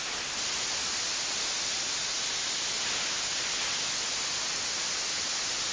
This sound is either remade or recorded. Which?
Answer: recorded